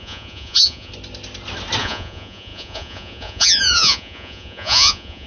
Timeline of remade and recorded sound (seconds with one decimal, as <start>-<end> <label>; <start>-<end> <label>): 0.0-0.9 remade; 0.9-1.8 recorded; 1.8-5.3 remade